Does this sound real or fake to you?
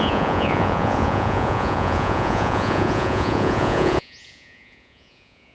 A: fake